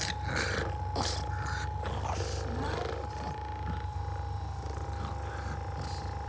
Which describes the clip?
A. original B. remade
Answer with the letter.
A